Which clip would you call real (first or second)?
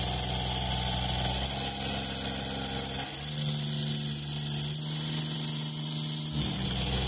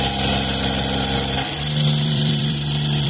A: first